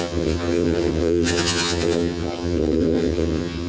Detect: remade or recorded remade